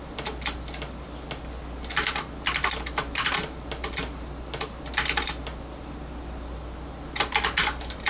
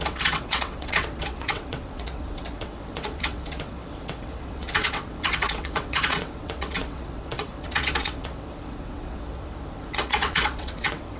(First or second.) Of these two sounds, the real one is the first